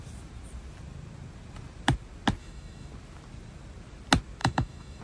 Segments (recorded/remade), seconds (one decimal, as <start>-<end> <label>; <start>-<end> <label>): 0.0-2.4 recorded; 2.4-2.9 remade; 2.9-4.4 recorded; 4.4-5.0 remade